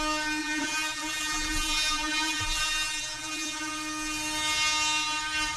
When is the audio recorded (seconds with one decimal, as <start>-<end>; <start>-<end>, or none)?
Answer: 0.0-0.4; 3.7-5.6